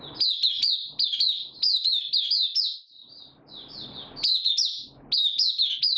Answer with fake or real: real